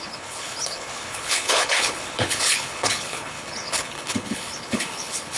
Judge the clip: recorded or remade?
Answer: remade